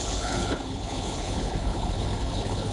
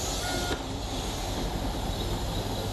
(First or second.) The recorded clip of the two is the second